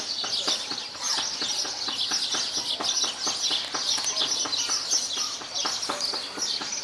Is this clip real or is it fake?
real